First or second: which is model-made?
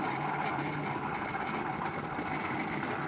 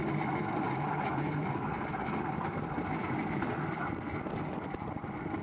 second